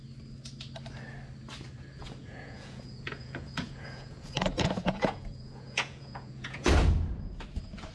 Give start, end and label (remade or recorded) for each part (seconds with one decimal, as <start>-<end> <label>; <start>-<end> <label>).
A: 0.0-2.0 recorded; 2.0-6.7 remade; 6.7-7.9 recorded